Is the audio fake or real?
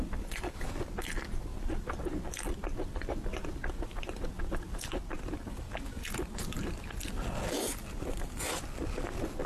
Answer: real